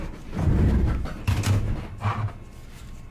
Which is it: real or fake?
real